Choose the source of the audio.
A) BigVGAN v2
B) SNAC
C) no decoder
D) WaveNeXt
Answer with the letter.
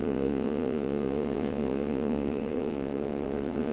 D